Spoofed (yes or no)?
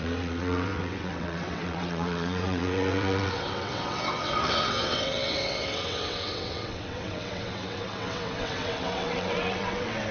yes